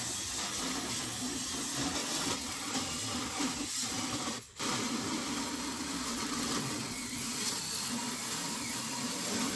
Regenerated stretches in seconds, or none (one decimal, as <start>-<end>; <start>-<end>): 2.0-2.7; 6.1-7.0